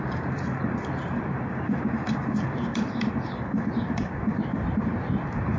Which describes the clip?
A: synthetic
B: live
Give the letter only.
A